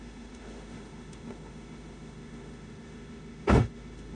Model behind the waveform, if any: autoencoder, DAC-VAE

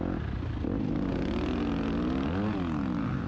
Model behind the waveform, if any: none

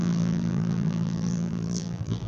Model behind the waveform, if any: vocoder, BigVGAN v2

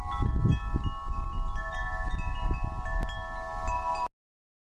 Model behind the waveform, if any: none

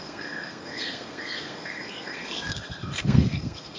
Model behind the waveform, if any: codec, SNAC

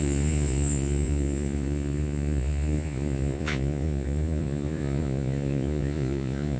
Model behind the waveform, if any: vocoder, Vocos